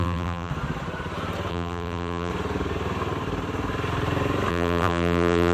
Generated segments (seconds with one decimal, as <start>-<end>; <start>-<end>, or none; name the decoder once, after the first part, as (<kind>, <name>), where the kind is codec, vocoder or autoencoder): 0.0-0.5 (vocoder, BigVGAN v2); 1.5-2.3; 4.5-5.5